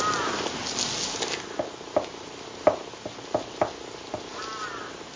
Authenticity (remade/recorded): recorded